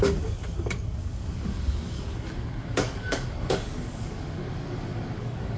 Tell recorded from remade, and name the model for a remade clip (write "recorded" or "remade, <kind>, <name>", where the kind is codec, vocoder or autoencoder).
remade, codec, DAC